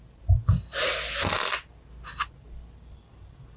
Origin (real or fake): real